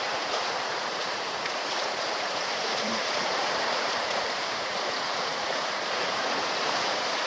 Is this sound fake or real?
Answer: fake